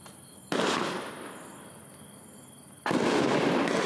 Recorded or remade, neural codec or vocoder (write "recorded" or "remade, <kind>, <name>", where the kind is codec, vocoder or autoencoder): recorded